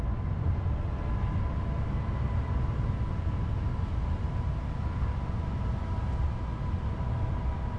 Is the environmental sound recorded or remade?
recorded